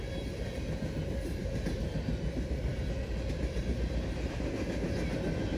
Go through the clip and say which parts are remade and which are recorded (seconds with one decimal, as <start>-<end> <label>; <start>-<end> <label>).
0.0-2.7 recorded; 2.7-3.6 remade; 3.6-5.6 recorded